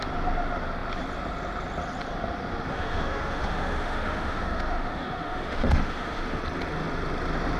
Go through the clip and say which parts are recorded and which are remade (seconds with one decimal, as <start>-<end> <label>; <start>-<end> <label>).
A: 0.0-2.7 recorded; 2.7-6.4 remade; 6.4-7.6 recorded